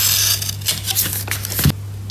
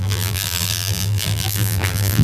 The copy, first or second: second